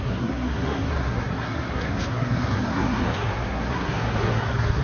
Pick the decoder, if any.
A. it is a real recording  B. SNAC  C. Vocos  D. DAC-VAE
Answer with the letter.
B